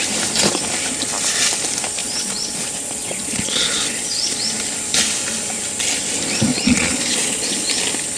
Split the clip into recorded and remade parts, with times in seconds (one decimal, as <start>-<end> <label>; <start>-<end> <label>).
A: 0.0-2.0 recorded; 2.0-4.4 remade; 4.4-6.5 recorded; 6.5-7.5 remade; 7.5-8.2 recorded

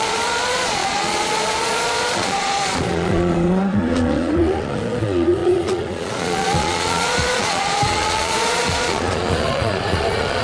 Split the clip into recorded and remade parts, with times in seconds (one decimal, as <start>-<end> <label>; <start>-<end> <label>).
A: 0.0-10.4 remade